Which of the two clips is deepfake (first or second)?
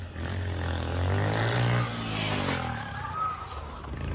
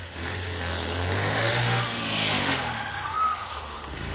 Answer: second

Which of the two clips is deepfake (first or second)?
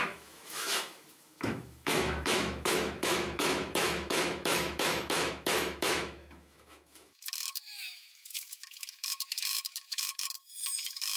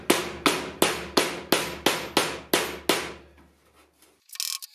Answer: first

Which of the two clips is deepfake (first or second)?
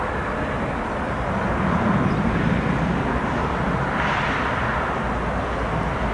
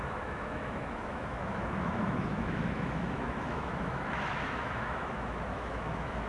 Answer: second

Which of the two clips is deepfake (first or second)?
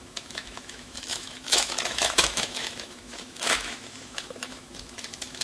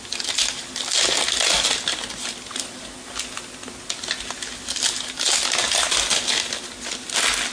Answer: first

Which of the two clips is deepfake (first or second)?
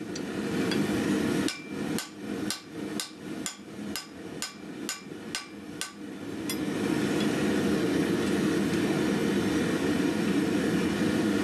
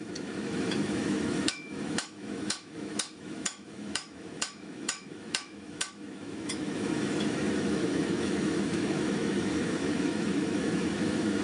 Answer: second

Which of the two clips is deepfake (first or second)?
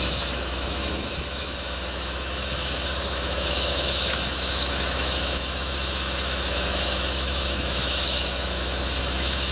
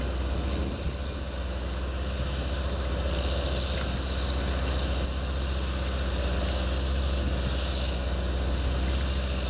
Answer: first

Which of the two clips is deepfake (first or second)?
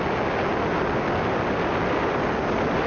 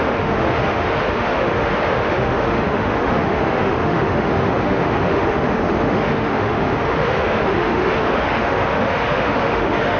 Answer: second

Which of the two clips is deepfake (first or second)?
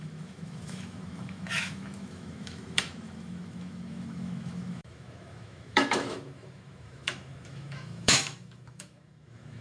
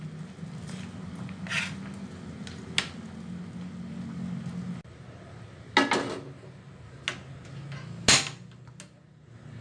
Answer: first